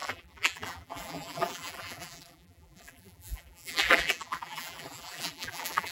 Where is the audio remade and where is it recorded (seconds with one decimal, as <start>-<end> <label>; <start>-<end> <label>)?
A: 0.0-5.9 remade

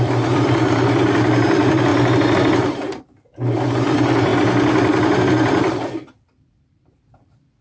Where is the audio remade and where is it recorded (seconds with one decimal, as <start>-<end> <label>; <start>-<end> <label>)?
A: 0.0-1.9 remade; 1.9-3.0 recorded; 3.0-4.3 remade; 4.3-5.2 recorded; 5.2-7.6 remade

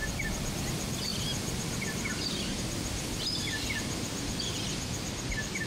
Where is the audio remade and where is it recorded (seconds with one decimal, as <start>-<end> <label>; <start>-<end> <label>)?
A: 0.0-0.6 recorded; 0.6-5.7 remade

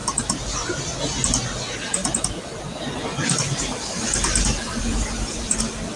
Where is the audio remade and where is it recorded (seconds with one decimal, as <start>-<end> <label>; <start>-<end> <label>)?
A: 0.0-0.8 remade; 0.8-2.0 recorded; 2.0-5.6 remade; 5.6-6.0 recorded

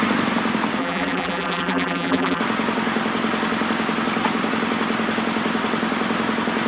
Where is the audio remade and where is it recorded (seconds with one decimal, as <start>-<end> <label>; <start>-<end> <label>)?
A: 0.0-0.8 recorded; 0.8-2.4 remade; 2.4-6.7 recorded